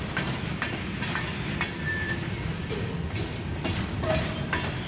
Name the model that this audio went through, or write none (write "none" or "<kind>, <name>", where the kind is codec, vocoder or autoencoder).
vocoder, BigVGAN v2